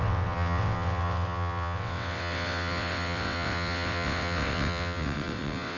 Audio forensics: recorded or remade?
remade